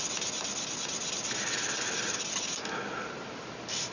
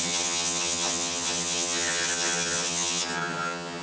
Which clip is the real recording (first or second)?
first